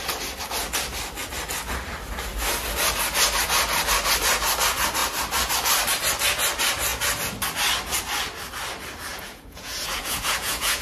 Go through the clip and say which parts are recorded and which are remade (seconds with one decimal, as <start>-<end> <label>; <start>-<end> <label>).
0.0-9.1 recorded; 9.1-10.8 remade